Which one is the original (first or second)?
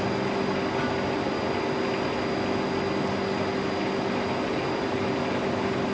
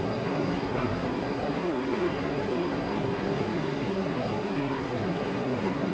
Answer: first